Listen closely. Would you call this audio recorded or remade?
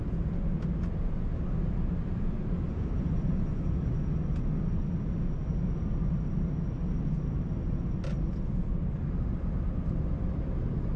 recorded